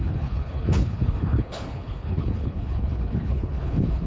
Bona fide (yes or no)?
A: no